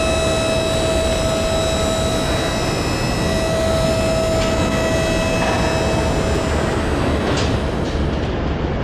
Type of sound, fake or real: real